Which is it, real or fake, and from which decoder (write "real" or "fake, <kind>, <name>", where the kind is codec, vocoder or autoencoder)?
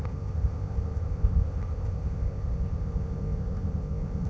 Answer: fake, codec, ZipCodec